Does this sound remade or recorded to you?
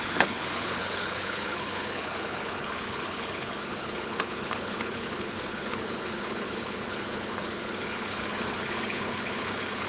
remade